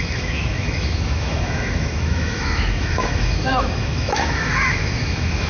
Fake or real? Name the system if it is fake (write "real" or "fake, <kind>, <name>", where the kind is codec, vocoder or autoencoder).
fake, autoencoder, DAC-VAE